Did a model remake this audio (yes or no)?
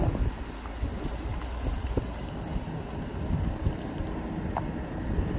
no